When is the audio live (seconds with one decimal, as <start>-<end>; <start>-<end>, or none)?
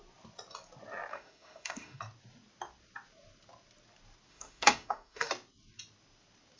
0.0-1.1; 2.0-4.3; 5.3-6.6